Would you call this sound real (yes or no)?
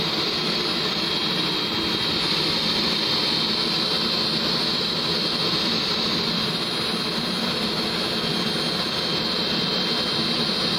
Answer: yes